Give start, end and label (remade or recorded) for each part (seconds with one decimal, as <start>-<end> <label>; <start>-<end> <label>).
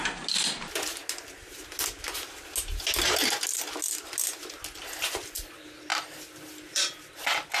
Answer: 0.0-5.9 recorded; 5.9-7.6 remade